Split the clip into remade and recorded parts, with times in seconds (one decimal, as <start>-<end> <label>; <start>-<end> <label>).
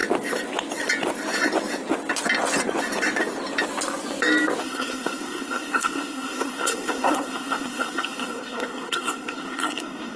0.0-4.6 recorded; 4.6-10.2 remade